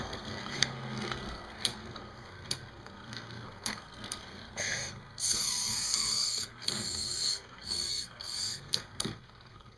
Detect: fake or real fake